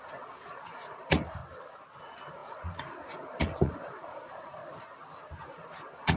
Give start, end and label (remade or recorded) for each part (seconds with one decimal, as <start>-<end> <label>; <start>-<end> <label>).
0.0-1.4 remade; 1.4-2.0 recorded; 2.0-4.6 remade; 4.6-5.4 recorded; 5.4-6.2 remade